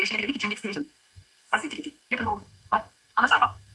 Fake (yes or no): yes